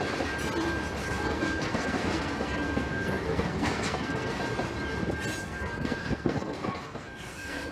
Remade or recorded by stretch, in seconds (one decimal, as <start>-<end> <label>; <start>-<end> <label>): 0.0-1.0 recorded; 1.0-4.4 remade; 4.4-5.4 recorded; 5.4-7.7 remade